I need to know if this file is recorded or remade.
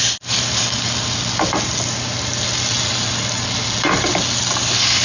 recorded